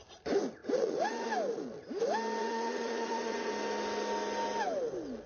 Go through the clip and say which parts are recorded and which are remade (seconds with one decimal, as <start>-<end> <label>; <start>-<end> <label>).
0.0-0.6 recorded; 0.6-1.3 remade; 1.3-2.4 recorded; 2.4-3.5 remade; 3.5-5.3 recorded